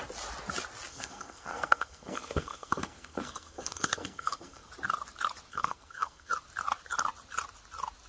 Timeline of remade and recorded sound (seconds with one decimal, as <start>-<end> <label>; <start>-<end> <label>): 0.0-0.9 recorded; 0.9-4.7 remade; 4.7-5.5 recorded; 5.5-6.3 remade; 6.3-8.1 recorded